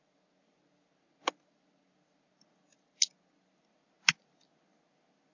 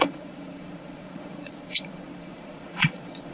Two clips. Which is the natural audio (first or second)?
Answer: first